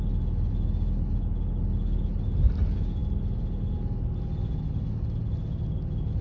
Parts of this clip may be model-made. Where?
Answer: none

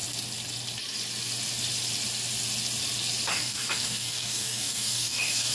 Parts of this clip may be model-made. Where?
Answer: 3.3-5.5 (codec, DAC)

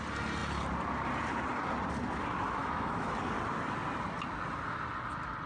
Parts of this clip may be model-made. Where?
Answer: 2.6-3.2 (autoencoder, DAC-VAE)

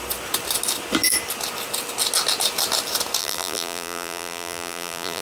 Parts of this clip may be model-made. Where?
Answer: 3.2-5.2 (vocoder, BigVGAN v2)